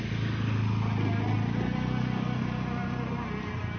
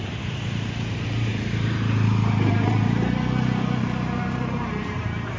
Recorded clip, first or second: first